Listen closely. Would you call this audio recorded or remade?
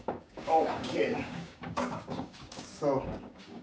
remade